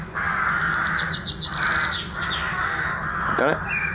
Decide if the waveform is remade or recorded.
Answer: recorded